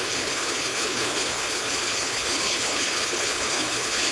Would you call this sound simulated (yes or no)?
yes